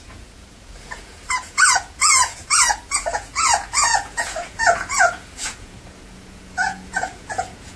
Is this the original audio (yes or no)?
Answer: no